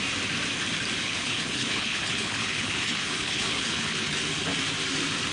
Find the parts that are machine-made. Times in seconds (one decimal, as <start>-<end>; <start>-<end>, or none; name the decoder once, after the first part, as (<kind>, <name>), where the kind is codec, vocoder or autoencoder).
1.0-4.1 (codec, HILCodec)